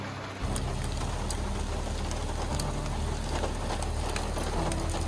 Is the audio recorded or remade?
recorded